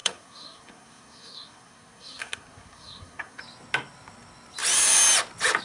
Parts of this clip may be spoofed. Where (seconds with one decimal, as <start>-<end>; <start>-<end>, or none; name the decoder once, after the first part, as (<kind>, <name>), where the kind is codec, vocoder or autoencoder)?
0.0-3.4 (codec, SNAC)